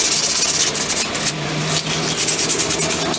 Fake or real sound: real